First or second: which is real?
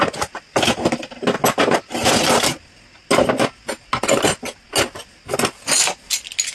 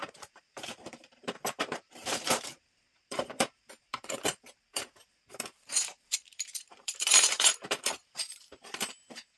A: first